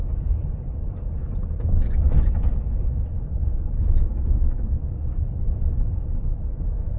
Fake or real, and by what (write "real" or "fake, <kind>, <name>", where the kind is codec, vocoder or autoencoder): real